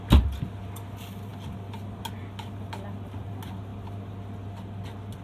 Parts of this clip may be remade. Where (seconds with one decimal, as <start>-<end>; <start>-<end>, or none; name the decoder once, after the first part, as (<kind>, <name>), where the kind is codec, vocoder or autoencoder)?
none